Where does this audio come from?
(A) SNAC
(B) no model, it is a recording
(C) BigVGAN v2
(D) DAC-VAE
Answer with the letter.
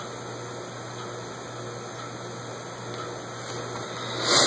B